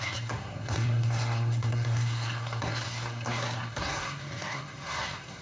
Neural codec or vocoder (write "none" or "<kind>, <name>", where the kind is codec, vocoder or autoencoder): codec, SNAC